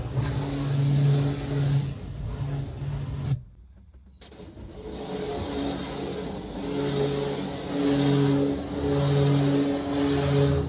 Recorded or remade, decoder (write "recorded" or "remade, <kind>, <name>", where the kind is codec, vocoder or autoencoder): recorded